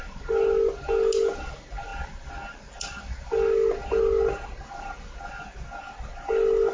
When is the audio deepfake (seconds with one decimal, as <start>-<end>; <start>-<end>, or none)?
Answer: none